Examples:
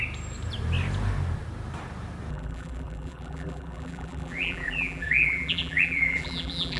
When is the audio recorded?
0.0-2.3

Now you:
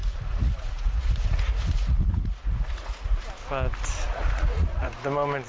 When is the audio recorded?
3.3-4.1; 5.0-5.5